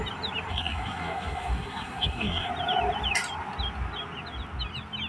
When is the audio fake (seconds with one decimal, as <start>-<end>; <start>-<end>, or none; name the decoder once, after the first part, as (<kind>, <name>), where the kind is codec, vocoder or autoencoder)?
0.5-2.5 (codec, SNAC)